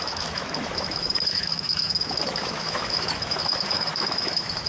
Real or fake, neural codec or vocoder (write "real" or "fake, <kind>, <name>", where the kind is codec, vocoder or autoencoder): fake, autoencoder, DAC-VAE